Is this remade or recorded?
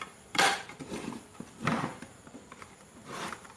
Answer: remade